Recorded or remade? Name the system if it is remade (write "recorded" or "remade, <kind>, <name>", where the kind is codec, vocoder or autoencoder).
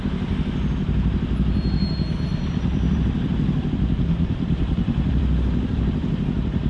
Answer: remade, vocoder, BigVGAN v2